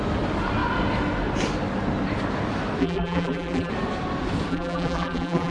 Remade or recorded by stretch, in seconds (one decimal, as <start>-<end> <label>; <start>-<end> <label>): 0.0-2.8 recorded; 2.8-3.7 remade; 3.7-4.5 recorded; 4.5-5.5 remade